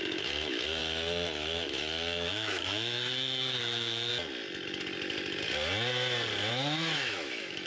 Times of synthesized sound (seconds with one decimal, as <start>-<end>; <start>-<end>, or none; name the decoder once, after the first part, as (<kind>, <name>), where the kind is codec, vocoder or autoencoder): 0.0-4.1 (autoencoder, DAC-VAE); 6.5-7.7